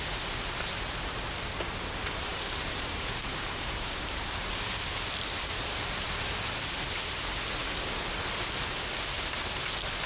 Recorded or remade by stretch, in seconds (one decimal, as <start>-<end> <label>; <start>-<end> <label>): 0.0-2.3 recorded; 2.3-4.5 remade; 4.5-10.1 recorded